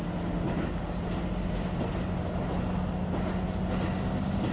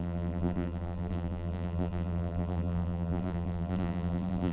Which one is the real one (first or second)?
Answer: first